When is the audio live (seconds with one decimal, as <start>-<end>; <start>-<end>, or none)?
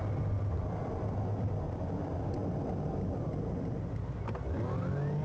0.0-5.2